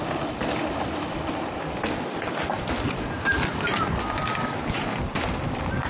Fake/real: real